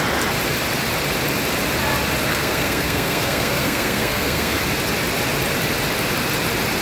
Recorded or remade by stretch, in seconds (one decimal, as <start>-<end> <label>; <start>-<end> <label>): 0.0-2.3 recorded; 2.3-4.6 remade; 4.6-6.8 recorded